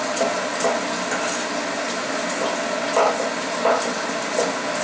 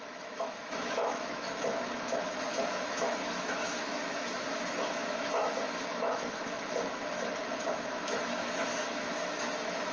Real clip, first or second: first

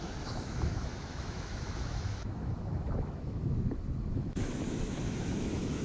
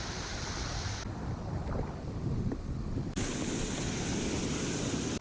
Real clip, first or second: second